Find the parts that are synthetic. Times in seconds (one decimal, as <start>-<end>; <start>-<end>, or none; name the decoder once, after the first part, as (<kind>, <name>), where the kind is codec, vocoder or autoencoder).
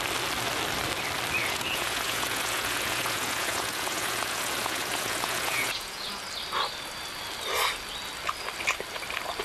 1.4-6.2 (vocoder, Vocos)